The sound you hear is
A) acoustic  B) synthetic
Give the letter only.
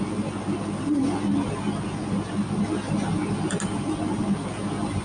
A